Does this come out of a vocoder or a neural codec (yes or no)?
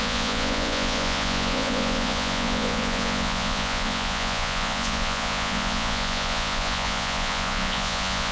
yes